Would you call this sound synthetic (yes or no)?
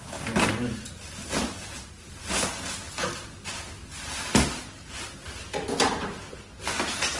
no